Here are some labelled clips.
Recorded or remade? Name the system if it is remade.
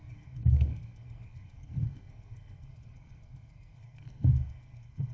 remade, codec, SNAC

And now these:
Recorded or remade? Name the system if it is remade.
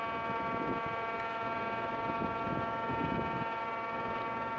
recorded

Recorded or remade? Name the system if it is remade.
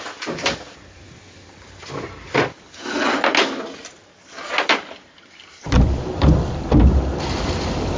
recorded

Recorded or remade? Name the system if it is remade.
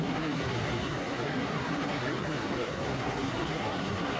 remade, codec, SNAC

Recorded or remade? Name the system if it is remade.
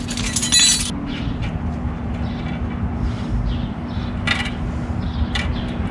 recorded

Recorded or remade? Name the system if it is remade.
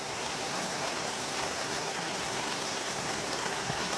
remade, codec, SNAC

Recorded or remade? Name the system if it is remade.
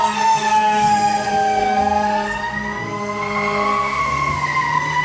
remade, codec, SNAC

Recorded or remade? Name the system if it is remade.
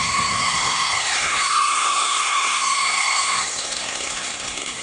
remade, codec, SNAC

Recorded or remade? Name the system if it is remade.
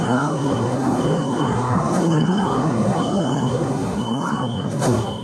remade, codec, SNAC